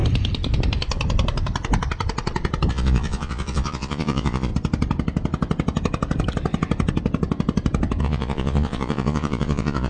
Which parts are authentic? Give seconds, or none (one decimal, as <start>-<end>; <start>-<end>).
0.0-2.7; 4.5-8.0